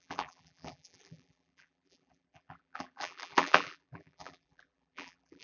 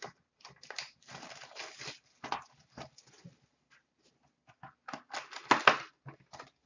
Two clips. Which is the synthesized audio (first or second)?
first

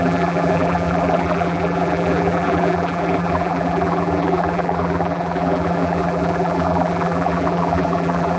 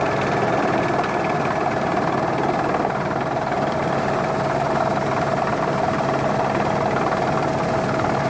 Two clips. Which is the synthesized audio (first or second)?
first